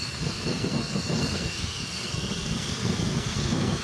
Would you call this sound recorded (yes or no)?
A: no